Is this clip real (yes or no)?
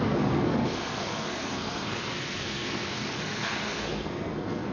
no